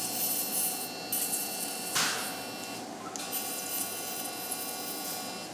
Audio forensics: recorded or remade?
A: recorded